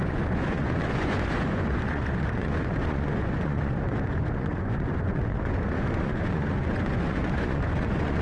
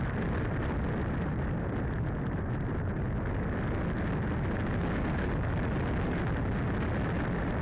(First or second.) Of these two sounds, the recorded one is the second